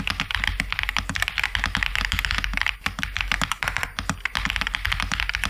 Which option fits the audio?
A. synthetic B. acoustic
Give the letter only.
B